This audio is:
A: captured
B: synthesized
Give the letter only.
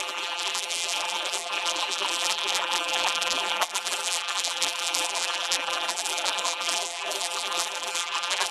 B